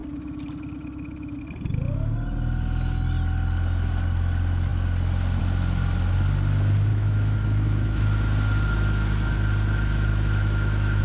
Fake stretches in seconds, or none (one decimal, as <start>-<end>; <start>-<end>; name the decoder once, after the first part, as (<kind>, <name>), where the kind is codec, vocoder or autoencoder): 6.9-8.0 (autoencoder, DAC-VAE); 10.1-11.0